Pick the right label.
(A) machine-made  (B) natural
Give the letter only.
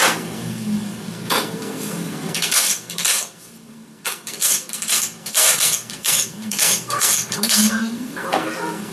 A